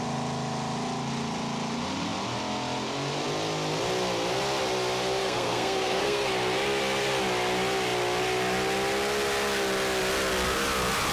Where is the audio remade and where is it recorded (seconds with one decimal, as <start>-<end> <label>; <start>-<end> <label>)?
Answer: 0.0-5.2 recorded; 5.2-6.3 remade; 6.3-11.1 recorded